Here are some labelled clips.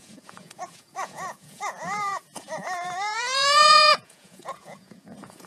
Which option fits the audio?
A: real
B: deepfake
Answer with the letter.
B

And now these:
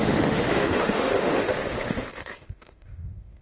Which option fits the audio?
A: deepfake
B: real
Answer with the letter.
A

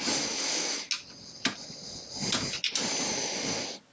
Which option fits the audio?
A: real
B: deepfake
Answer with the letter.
A